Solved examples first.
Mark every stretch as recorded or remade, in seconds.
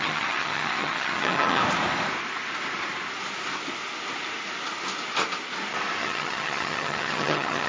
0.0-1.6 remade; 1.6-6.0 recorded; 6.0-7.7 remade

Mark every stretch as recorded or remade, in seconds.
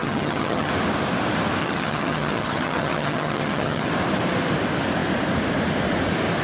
0.0-0.7 remade; 0.7-1.6 recorded; 1.6-3.9 remade; 3.9-6.4 recorded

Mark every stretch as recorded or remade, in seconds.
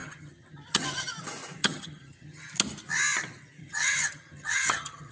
0.0-1.1 remade; 1.1-1.6 recorded; 1.6-2.5 remade; 2.5-3.6 recorded; 3.6-5.1 remade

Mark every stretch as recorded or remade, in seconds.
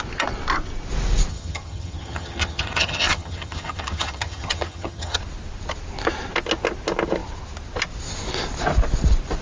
0.0-1.3 recorded; 1.3-5.2 remade; 5.2-9.4 recorded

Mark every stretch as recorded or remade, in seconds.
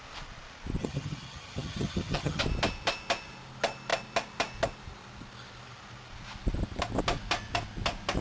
0.0-0.8 recorded; 0.8-2.4 remade; 2.4-8.2 recorded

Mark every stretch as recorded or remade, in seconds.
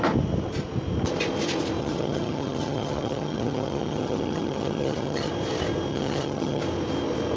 0.0-1.8 recorded; 1.8-5.3 remade; 5.3-5.9 recorded; 5.9-6.6 remade; 6.6-7.4 recorded